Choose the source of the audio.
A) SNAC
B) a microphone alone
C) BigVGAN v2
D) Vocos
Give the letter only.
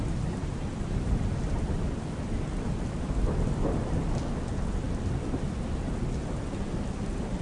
B